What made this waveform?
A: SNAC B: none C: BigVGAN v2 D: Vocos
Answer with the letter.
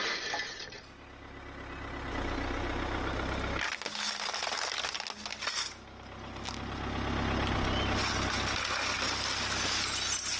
B